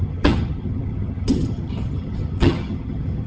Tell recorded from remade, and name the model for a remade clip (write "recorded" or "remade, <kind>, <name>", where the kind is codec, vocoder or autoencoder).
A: remade, vocoder, HiFi-GAN